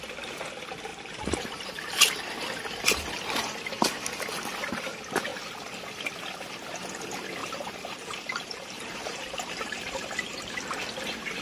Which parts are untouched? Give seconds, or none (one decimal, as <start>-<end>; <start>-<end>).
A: 0.0-0.9; 1.7-7.4; 10.6-11.4